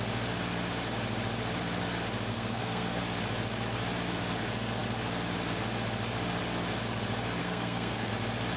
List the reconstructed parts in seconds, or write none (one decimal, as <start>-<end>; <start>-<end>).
2.3-3.0; 7.4-8.1